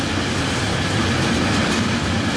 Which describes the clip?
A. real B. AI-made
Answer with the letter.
A